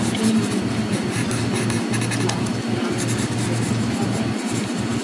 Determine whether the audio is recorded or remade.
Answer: recorded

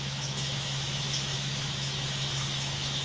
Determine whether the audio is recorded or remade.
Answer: remade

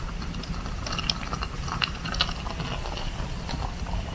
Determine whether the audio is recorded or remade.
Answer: recorded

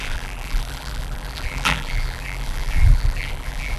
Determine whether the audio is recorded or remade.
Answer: remade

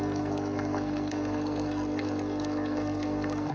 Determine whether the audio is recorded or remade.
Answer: remade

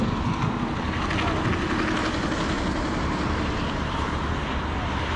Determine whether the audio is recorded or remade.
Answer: recorded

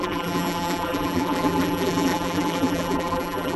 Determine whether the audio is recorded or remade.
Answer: remade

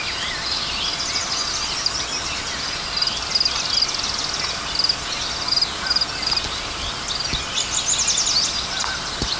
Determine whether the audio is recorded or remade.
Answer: recorded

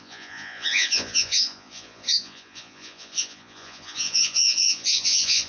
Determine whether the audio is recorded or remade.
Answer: remade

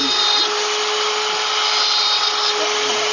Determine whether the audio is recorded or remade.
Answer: recorded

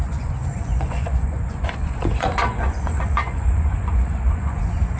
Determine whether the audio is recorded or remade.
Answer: remade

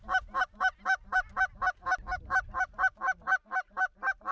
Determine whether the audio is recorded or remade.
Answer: recorded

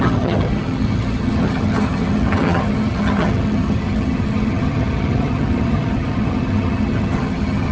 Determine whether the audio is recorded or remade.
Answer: remade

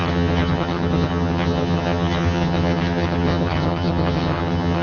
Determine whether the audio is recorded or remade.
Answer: remade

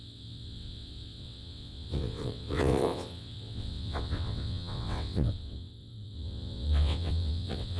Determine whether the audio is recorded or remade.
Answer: remade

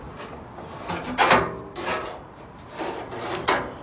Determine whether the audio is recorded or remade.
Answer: remade